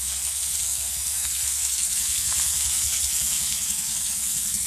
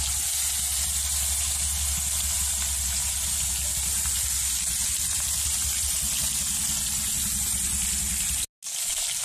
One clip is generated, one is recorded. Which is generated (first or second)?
first